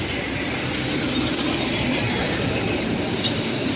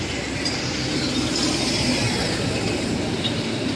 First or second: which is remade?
first